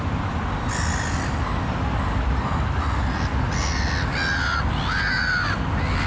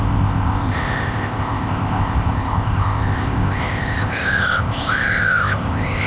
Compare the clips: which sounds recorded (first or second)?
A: first